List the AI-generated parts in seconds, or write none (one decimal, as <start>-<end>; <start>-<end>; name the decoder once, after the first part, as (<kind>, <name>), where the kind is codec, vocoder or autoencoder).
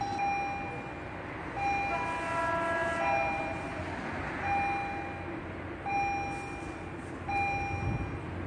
none